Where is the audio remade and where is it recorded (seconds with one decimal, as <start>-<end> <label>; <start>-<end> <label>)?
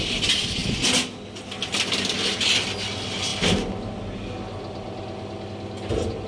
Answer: 0.0-6.3 recorded